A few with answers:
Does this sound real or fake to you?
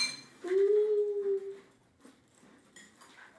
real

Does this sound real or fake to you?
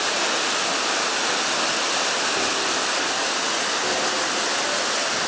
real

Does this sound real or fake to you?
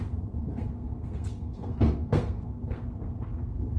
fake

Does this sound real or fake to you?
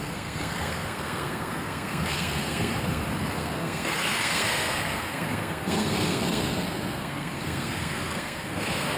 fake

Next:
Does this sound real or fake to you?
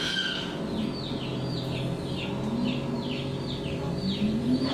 real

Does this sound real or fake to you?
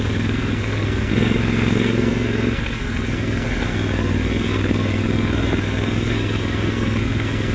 fake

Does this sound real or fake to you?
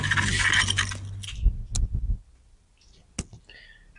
real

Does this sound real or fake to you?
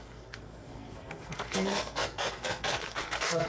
fake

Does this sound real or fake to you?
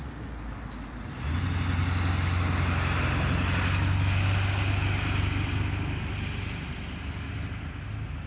real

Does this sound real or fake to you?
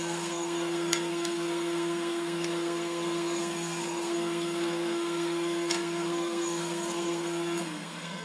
fake